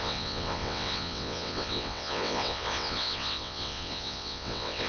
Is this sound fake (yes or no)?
yes